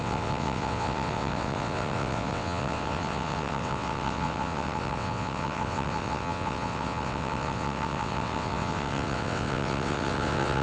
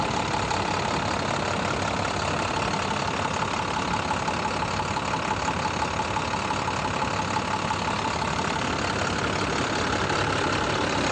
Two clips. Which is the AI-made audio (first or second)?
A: first